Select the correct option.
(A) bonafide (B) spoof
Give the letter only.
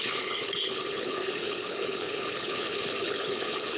B